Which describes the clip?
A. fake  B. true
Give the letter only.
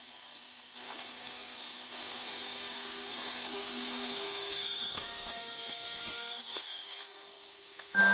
A